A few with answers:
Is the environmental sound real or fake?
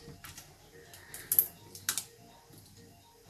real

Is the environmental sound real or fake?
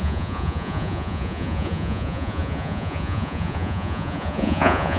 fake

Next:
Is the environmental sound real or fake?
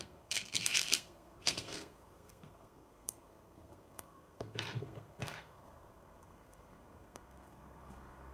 fake